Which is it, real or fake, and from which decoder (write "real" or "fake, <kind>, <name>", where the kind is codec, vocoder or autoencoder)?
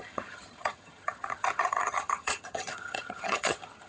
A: fake, vocoder, HiFi-GAN